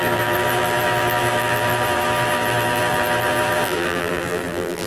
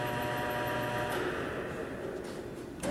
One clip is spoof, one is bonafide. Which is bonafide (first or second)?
second